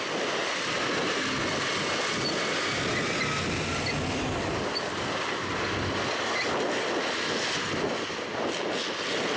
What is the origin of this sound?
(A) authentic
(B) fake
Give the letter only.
A